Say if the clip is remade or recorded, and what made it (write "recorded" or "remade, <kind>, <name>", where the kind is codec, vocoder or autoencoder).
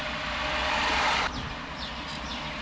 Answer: remade, vocoder, BigVGAN v2